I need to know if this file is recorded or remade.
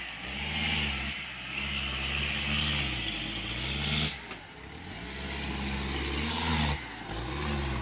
recorded